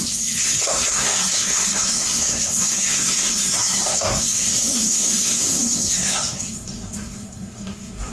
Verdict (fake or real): fake